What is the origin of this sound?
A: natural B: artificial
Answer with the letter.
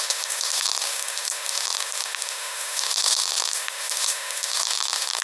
B